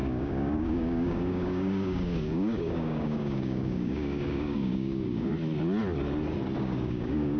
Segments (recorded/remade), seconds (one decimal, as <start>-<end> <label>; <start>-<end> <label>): 0.0-5.3 remade; 5.3-6.6 recorded; 6.6-7.4 remade

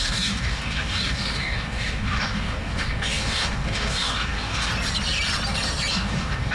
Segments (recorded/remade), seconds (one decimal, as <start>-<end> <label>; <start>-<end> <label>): 0.0-4.7 remade; 4.7-5.9 recorded; 5.9-6.5 remade

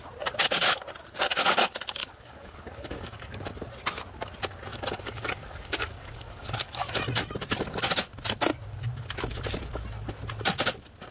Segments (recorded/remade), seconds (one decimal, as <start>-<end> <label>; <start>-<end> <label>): 0.0-2.0 recorded; 2.0-3.5 remade; 3.5-4.7 recorded; 4.7-7.0 remade; 7.0-11.1 recorded

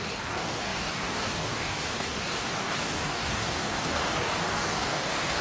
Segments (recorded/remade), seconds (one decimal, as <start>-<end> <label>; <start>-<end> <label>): 0.0-5.4 remade